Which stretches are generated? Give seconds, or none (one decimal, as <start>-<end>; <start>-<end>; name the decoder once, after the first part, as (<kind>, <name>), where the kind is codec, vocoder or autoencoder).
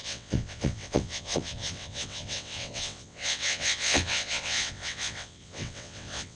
0.0-6.4 (vocoder, WaveNeXt)